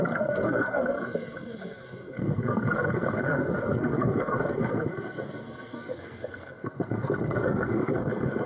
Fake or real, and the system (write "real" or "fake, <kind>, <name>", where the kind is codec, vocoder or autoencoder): fake, codec, SNAC